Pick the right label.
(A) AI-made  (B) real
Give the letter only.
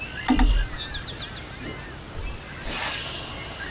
B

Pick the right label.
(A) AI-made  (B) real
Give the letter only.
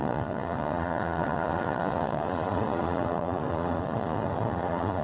A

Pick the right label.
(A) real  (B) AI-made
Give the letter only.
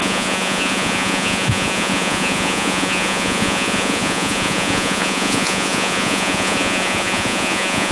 B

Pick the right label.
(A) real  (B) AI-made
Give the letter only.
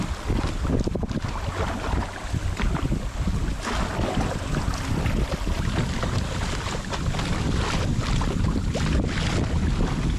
A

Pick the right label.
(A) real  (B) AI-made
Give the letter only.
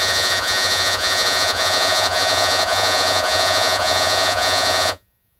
B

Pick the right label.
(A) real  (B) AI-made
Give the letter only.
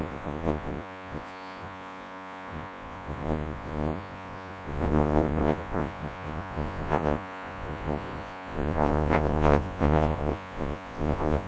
B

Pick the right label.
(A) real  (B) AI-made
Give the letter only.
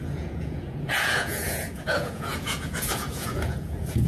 B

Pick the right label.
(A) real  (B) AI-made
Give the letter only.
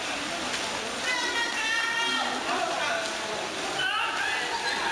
A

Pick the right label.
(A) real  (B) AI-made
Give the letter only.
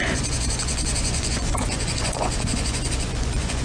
B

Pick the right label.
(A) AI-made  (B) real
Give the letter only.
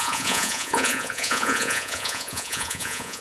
A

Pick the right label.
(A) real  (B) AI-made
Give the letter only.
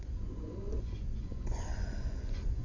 B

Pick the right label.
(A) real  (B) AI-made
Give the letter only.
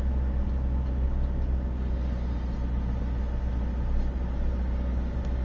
A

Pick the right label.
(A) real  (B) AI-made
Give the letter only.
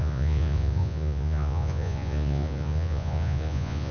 B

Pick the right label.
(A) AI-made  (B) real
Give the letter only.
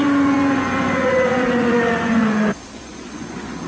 A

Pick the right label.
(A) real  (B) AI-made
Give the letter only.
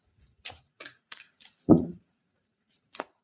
B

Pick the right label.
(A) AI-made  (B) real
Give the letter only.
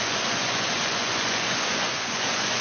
A